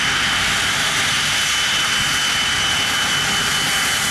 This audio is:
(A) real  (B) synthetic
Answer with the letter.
A